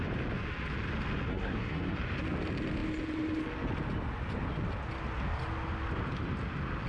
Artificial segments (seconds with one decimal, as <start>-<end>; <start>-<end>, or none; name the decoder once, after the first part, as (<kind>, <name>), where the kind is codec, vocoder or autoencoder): 1.3-2.0 (codec, SNAC)